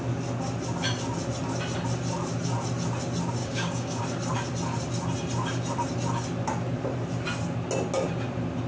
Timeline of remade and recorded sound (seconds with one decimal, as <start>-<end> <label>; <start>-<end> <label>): 0.0-3.4 recorded; 3.4-4.0 remade; 4.0-8.7 recorded